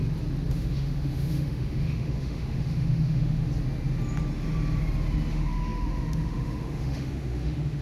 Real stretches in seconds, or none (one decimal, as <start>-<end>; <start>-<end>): 0.0-0.5; 3.5-5.3